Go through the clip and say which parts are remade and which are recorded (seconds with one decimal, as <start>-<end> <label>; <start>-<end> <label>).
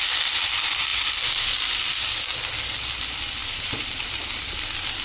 0.0-3.4 recorded; 3.4-4.0 remade; 4.0-5.0 recorded